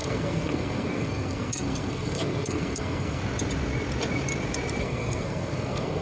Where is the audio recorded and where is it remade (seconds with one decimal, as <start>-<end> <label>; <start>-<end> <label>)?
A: 0.0-3.2 remade; 3.2-4.8 recorded; 4.8-6.0 remade